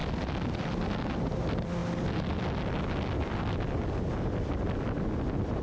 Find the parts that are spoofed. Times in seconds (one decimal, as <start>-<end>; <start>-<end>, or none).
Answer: none